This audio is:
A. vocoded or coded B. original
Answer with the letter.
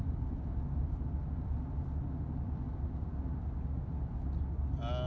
B